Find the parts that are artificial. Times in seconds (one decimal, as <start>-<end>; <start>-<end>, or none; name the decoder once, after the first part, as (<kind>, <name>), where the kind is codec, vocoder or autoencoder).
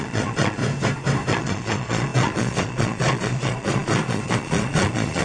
0.0-0.6 (vocoder, Vocos); 1.3-5.2